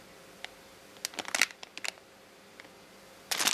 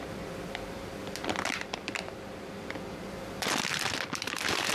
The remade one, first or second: second